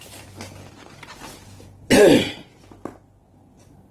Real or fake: real